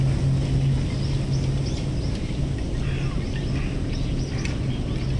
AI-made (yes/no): no